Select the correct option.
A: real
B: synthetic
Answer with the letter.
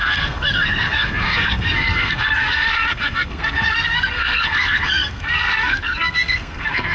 B